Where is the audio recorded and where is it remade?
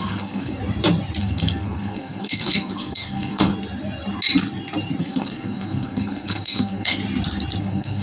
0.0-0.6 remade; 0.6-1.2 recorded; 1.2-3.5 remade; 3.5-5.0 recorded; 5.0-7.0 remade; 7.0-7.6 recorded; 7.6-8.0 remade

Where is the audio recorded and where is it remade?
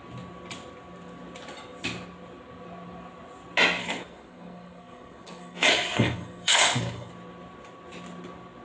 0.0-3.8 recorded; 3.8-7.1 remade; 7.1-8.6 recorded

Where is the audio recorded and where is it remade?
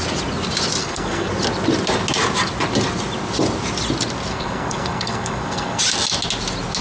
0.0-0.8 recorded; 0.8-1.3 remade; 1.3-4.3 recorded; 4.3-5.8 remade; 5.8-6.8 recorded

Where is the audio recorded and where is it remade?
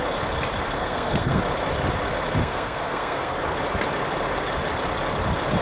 0.0-0.8 recorded; 0.8-1.4 remade; 1.4-2.4 recorded; 2.4-3.4 remade; 3.4-5.6 recorded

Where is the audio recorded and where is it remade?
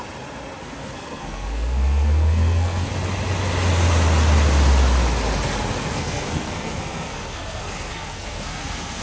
0.0-0.6 recorded; 0.6-2.9 remade; 2.9-5.9 recorded; 5.9-9.0 remade